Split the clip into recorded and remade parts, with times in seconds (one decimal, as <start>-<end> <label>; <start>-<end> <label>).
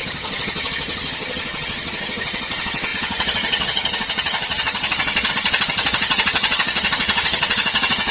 0.0-8.1 remade